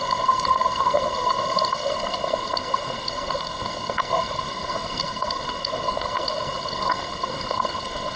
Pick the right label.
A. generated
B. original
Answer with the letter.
A